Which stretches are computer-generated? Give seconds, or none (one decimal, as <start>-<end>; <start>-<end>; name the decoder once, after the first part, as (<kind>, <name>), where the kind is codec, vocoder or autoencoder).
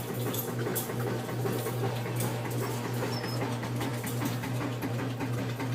none